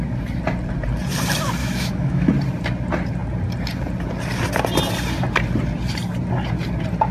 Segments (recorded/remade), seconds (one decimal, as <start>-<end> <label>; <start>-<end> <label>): 0.0-1.6 recorded; 1.6-2.3 remade; 2.3-7.1 recorded